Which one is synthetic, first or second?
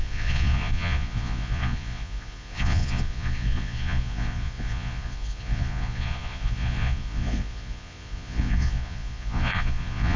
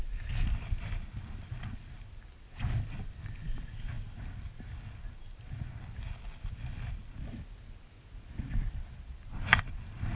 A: first